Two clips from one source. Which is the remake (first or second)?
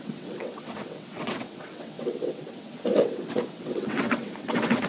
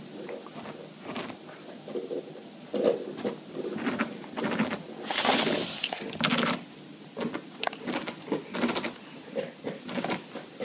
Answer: first